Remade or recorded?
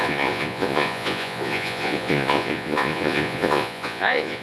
remade